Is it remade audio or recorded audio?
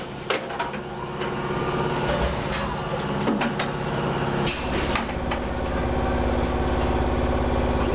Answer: recorded